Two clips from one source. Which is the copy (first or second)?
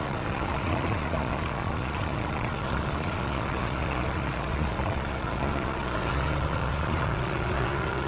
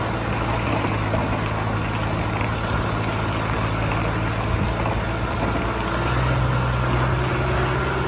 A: first